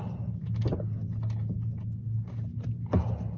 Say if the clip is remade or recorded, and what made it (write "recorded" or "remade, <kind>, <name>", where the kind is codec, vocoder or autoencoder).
recorded